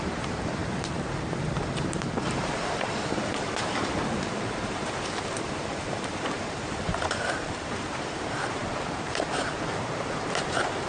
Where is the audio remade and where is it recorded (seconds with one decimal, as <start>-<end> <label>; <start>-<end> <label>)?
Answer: 0.0-10.9 remade